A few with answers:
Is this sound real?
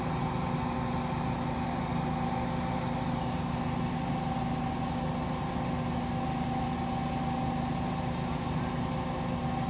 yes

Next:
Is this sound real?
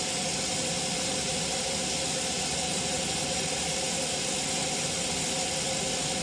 yes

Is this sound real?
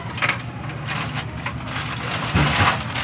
yes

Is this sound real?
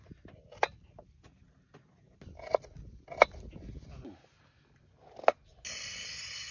yes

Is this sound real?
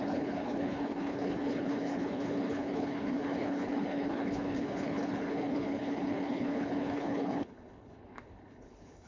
no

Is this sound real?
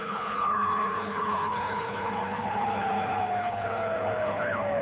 no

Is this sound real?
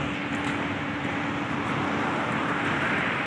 yes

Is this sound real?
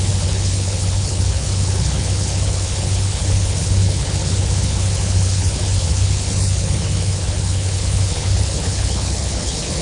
no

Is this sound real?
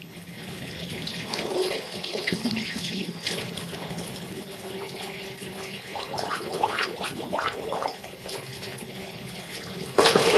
no